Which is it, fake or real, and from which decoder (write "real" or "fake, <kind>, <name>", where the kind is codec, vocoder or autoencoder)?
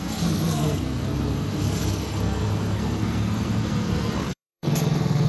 fake, codec, SNAC